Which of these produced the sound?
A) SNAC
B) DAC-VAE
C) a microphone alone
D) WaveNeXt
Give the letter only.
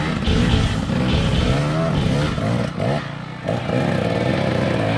C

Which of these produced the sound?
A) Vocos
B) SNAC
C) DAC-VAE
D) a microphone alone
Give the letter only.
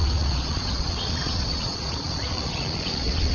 A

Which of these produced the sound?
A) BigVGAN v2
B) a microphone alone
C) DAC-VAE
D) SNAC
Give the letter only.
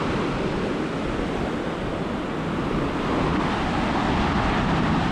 B